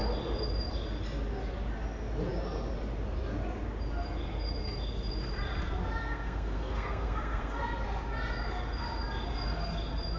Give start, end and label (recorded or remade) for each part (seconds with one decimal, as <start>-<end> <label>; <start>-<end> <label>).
0.0-6.0 recorded; 6.0-7.6 remade; 7.6-10.2 recorded